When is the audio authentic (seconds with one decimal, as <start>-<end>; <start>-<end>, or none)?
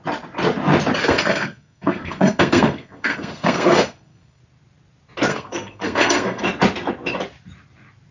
0.0-1.0; 4.4-5.3; 6.4-8.1